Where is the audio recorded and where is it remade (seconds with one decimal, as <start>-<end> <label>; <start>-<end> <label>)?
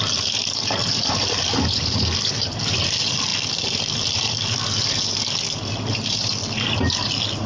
0.0-7.5 recorded